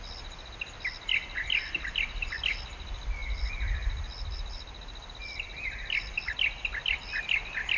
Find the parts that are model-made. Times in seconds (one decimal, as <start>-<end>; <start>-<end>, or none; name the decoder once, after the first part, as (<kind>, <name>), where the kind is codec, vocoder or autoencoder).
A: none